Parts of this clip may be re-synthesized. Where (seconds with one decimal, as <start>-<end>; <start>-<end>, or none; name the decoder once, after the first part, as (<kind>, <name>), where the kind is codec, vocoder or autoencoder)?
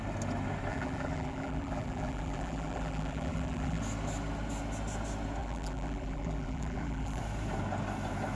0.7-3.8 (vocoder, BigVGAN v2); 5.4-7.2